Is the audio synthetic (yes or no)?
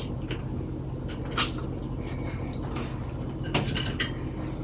no